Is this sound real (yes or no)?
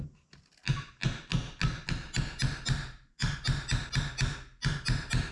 yes